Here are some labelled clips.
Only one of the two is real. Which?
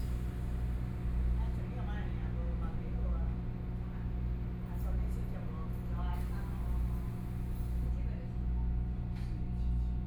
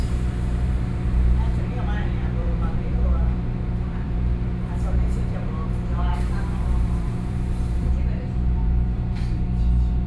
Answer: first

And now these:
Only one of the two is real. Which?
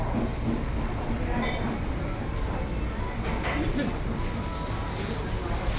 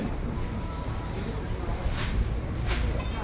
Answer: first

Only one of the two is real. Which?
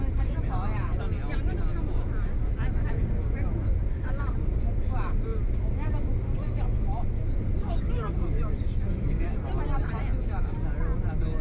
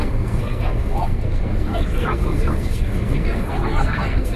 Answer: first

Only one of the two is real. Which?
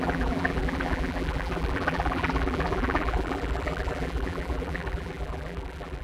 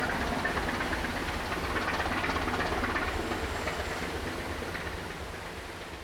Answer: second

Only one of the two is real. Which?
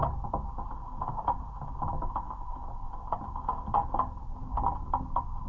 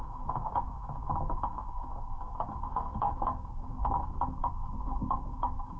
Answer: first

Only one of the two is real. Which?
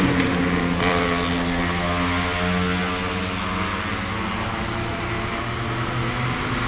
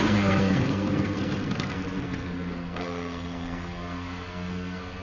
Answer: first